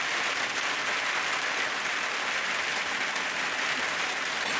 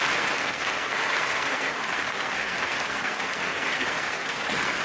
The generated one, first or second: second